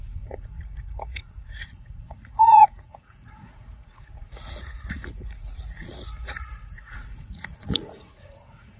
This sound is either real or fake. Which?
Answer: fake